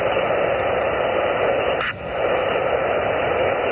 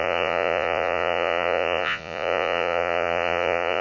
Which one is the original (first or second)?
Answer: first